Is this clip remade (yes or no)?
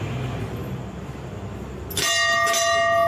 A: no